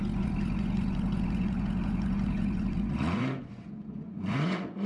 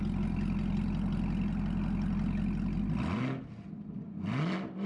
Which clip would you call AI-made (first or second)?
first